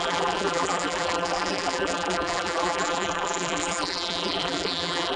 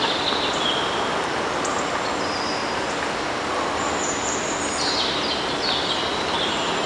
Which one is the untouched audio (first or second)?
second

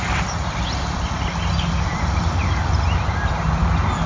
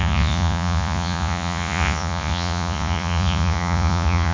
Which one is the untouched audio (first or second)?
first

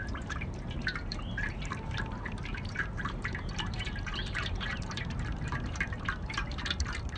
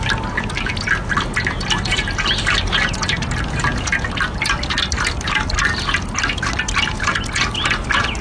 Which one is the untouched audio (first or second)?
second